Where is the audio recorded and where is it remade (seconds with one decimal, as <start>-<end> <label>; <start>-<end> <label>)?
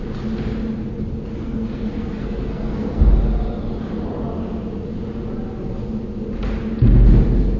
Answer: 0.0-1.3 recorded; 1.3-3.0 remade; 3.0-7.6 recorded